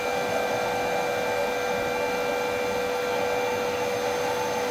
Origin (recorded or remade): recorded